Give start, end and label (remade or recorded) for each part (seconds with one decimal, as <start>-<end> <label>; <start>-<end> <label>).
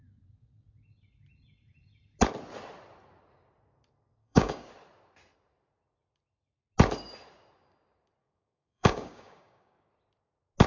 0.0-4.2 recorded; 4.2-4.7 remade; 4.7-8.2 recorded; 8.2-9.9 remade; 9.9-10.7 recorded